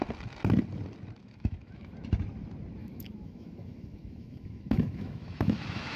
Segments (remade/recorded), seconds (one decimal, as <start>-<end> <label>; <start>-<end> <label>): 0.0-1.2 recorded; 1.2-1.9 remade; 1.9-2.8 recorded; 2.8-6.0 remade